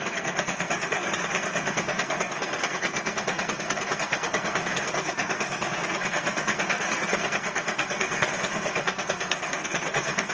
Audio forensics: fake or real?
fake